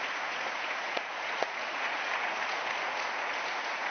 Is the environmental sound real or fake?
fake